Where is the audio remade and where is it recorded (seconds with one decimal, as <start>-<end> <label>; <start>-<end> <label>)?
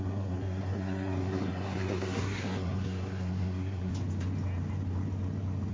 0.0-3.9 remade; 3.9-5.7 recorded